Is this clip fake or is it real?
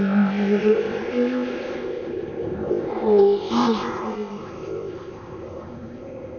fake